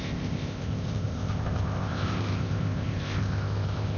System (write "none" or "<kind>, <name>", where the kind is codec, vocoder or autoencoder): codec, ZipCodec